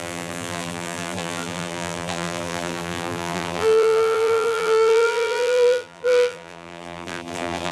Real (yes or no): no